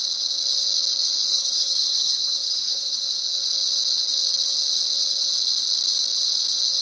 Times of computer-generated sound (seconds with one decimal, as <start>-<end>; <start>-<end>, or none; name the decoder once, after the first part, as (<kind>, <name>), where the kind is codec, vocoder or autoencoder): 1.3-3.0 (codec, SNAC)